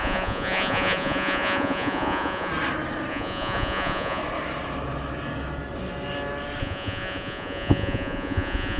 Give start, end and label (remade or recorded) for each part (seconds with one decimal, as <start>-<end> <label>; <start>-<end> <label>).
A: 0.0-2.5 remade; 2.5-3.1 recorded; 3.1-4.2 remade; 4.2-6.6 recorded; 6.6-8.8 remade